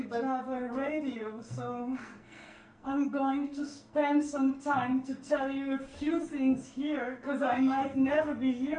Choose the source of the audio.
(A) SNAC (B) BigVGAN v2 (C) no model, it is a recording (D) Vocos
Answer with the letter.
A